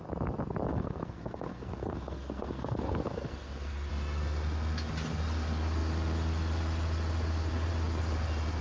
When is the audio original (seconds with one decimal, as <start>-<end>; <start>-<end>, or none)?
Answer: 0.0-0.7; 3.9-8.6